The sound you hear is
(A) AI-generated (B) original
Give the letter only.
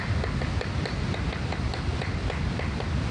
A